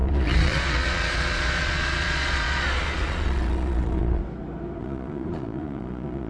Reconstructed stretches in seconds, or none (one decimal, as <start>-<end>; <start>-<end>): 0.0-4.2; 4.8-6.3

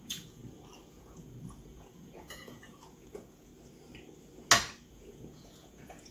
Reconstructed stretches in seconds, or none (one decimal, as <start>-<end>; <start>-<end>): 0.0-0.4; 0.9-3.5; 4.9-6.1

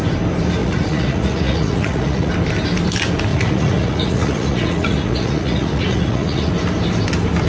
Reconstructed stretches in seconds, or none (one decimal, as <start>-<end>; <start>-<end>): 0.6-2.3; 3.3-6.5

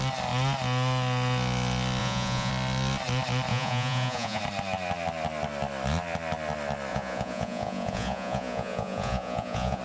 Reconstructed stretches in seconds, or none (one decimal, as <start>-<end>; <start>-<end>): 2.0-2.5; 3.5-4.4; 6.9-9.8

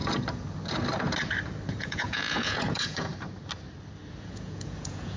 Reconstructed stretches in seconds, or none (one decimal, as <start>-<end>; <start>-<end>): 1.7-3.1; 4.2-5.2

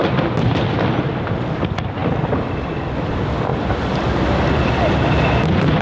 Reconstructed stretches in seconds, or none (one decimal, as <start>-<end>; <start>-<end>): none

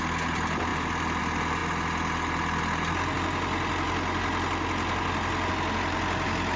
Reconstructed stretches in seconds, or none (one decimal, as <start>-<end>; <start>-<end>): none

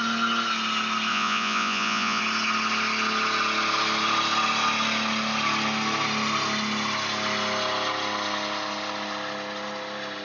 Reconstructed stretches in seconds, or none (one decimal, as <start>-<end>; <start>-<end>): 1.1-2.2